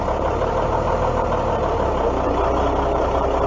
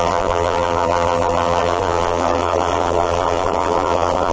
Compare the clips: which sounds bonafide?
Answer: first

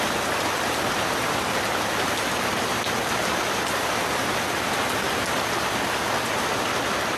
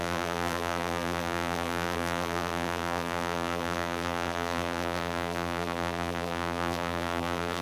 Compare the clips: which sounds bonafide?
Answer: first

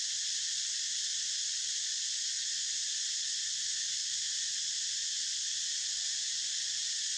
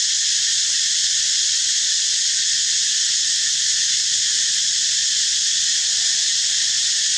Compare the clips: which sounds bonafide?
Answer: second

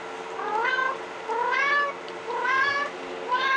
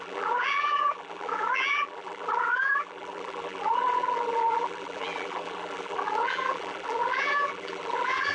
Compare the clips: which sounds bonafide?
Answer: first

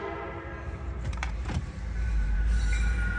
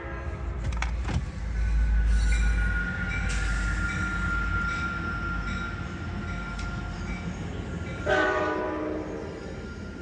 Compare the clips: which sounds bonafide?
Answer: second